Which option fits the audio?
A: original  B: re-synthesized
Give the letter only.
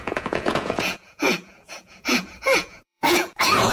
B